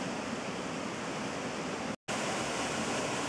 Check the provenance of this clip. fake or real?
real